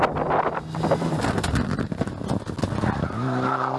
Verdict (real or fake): real